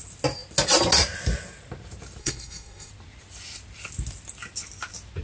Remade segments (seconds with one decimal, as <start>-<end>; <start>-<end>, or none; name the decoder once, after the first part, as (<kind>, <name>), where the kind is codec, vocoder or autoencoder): 2.2-2.9 (codec, SNAC)